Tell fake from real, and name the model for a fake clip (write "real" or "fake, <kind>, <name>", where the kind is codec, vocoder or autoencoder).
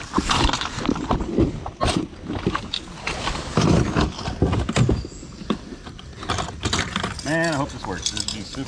real